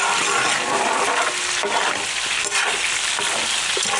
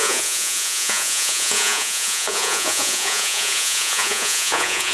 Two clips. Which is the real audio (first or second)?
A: first